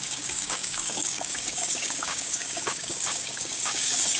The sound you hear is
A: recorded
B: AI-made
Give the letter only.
B